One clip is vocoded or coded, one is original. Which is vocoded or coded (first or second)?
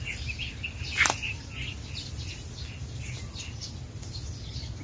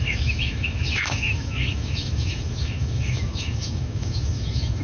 second